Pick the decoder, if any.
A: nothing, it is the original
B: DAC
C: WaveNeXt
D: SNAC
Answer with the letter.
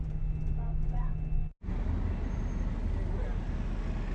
A